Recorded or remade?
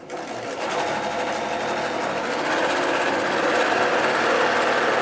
recorded